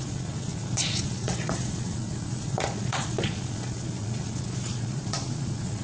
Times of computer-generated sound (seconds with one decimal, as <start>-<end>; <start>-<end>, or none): 0.0-5.8